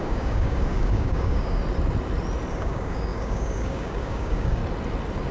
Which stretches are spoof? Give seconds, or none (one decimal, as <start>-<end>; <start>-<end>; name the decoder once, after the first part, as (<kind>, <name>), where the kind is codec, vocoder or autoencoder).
0.0-1.6 (codec, DAC); 2.5-4.6

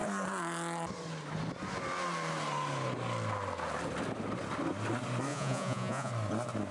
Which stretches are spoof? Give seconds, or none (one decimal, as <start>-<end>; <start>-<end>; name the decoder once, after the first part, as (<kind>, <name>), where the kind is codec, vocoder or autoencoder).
5.3-6.1 (vocoder, Vocos)